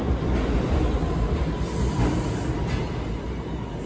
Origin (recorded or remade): recorded